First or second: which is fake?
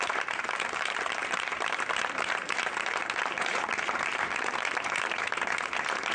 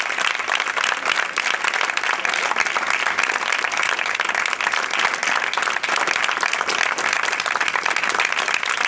first